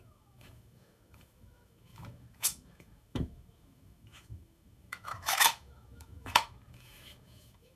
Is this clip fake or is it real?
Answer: fake